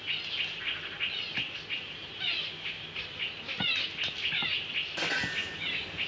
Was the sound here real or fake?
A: real